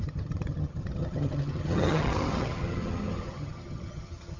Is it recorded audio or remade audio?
remade